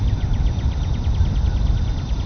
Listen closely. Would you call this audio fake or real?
real